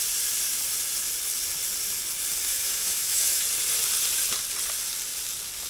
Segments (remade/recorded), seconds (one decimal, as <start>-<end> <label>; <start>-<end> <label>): 0.0-2.5 recorded; 2.5-3.4 remade; 3.4-5.7 recorded